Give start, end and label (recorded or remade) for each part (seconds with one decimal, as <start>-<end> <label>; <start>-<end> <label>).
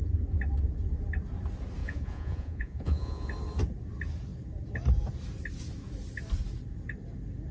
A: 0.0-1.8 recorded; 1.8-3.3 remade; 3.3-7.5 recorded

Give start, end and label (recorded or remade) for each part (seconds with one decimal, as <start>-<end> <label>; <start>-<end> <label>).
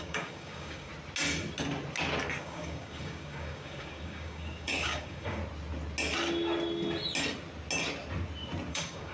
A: 0.0-0.9 remade; 0.9-2.4 recorded; 2.4-5.4 remade; 5.4-8.7 recorded; 8.7-9.1 remade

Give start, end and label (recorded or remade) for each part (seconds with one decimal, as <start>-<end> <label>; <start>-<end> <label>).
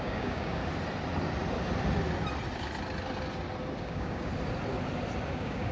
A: 0.0-0.6 remade; 0.6-3.8 recorded; 3.8-4.3 remade; 4.3-5.3 recorded; 5.3-5.7 remade